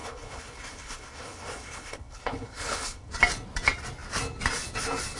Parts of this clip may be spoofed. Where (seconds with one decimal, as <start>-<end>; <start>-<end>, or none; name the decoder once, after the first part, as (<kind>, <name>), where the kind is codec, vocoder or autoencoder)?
0.0-3.1 (codec, HILCodec)